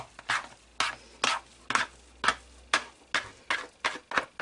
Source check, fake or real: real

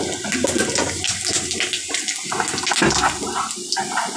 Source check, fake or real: real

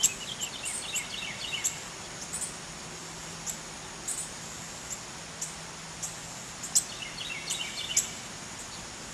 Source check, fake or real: real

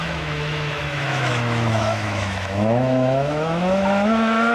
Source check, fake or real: fake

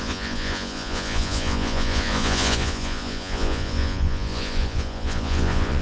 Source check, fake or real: fake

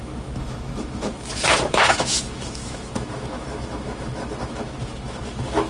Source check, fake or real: fake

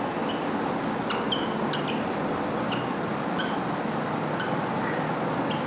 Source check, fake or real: real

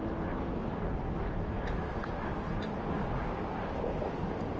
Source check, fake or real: real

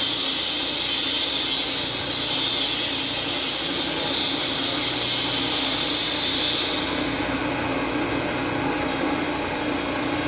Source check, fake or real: real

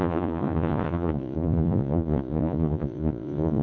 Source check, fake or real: fake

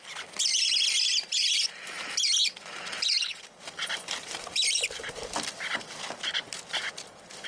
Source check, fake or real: real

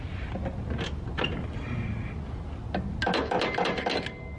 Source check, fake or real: real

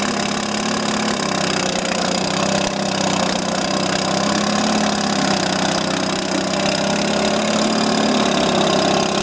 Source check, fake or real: real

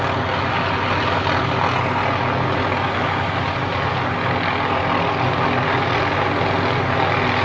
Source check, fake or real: real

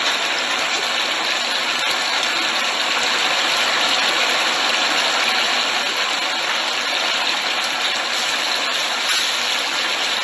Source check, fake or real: real